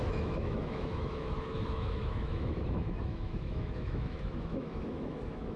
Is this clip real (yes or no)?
no